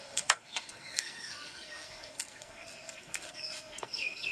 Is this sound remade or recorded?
remade